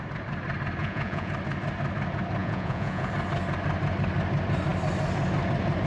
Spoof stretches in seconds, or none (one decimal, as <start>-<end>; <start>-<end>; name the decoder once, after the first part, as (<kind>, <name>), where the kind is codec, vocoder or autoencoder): 0.8-1.3 (vocoder, Vocos); 2.4-3.1